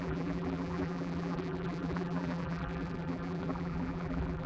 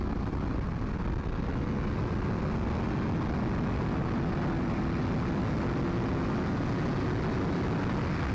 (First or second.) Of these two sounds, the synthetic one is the first